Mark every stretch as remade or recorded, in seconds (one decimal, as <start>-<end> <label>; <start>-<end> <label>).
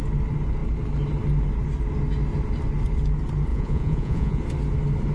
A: 0.0-3.5 recorded; 3.5-4.4 remade; 4.4-5.1 recorded